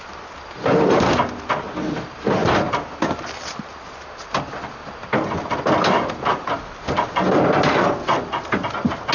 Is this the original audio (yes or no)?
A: yes